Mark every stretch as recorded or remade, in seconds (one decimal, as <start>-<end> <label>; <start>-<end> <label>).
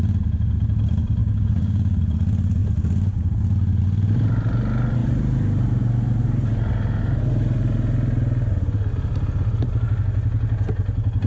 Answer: 0.0-1.2 recorded; 1.2-2.0 remade; 2.0-11.3 recorded